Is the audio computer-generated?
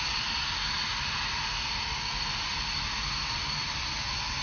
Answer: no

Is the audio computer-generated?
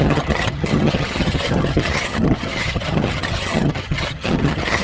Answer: yes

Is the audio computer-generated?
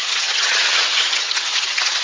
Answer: yes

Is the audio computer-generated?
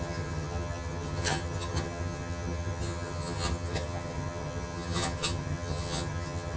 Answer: yes